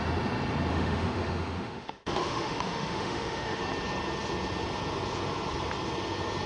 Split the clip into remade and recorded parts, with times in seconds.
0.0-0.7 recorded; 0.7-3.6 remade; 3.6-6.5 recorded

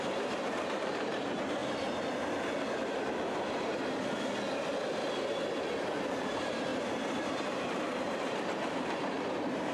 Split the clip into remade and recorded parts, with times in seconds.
0.0-1.6 remade; 1.6-6.1 recorded; 6.1-9.7 remade